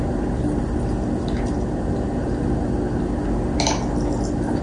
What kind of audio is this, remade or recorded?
recorded